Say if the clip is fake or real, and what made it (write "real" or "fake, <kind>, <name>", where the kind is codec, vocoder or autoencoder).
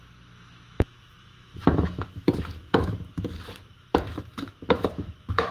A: fake, autoencoder, DAC-VAE